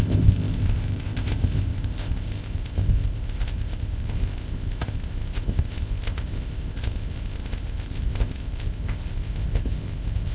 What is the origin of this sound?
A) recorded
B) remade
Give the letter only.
B